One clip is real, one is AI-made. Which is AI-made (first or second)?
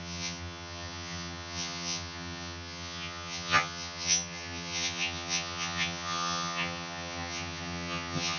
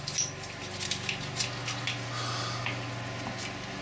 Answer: first